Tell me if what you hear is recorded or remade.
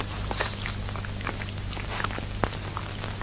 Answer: recorded